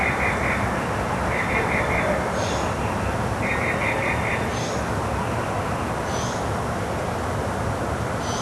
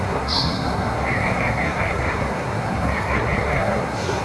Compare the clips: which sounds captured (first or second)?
first